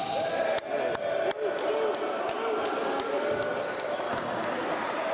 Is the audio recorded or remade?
recorded